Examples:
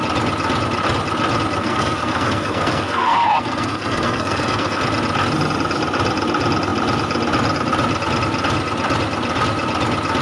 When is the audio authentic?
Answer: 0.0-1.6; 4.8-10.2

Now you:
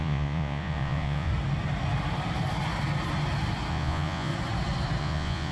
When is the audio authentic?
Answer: 1.3-3.7; 4.3-5.0

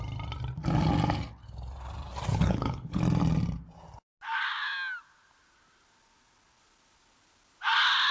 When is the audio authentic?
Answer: 0.0-2.3; 3.0-8.1

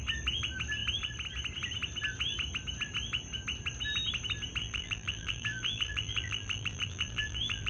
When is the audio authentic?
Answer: 0.0-4.6

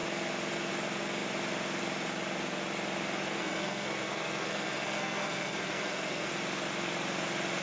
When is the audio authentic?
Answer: 0.0-3.4; 6.3-7.6

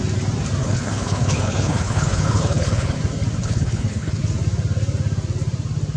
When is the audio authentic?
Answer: 0.0-0.6; 3.0-3.4; 4.2-6.0